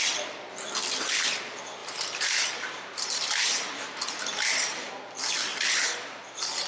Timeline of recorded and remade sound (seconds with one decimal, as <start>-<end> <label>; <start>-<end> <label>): 0.0-1.8 recorded; 1.8-4.9 remade; 4.9-5.5 recorded; 5.5-6.7 remade